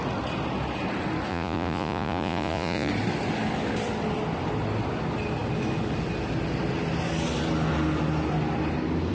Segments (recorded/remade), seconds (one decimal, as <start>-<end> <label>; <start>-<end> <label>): 0.0-1.3 recorded; 1.3-2.9 remade; 2.9-9.1 recorded

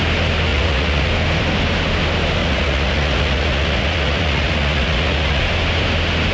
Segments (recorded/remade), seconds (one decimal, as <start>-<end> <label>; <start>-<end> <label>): 0.0-0.5 recorded; 0.5-1.1 remade; 1.1-2.4 recorded; 2.4-5.4 remade; 5.4-6.3 recorded

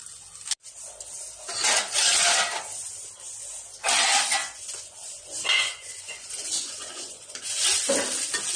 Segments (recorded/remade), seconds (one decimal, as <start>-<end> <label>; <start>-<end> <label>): 0.0-4.4 recorded; 4.4-7.5 remade; 7.5-8.6 recorded